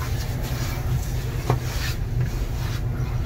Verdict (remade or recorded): recorded